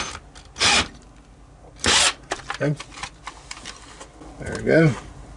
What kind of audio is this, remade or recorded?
recorded